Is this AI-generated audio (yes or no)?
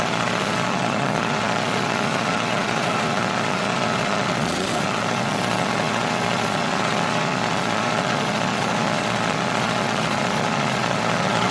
yes